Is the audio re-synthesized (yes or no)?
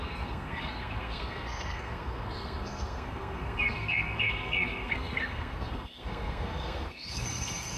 yes